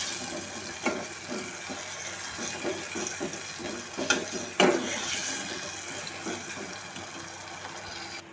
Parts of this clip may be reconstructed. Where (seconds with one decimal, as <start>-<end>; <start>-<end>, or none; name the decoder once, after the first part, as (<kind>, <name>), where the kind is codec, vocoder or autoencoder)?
none